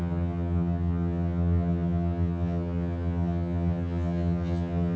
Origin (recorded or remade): remade